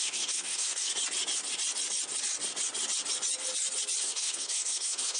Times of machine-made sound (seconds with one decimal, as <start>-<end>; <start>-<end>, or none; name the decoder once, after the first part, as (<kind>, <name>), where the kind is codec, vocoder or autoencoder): 0.0-0.9 (codec, SNAC); 4.0-5.2